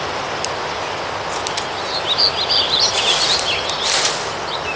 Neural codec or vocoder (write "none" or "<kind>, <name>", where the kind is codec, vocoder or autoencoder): none